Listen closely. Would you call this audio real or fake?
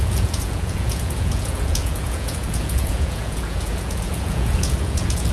fake